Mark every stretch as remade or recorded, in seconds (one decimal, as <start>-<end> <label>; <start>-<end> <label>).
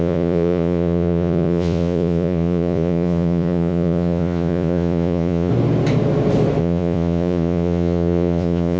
0.0-5.5 remade; 5.5-6.6 recorded; 6.6-8.8 remade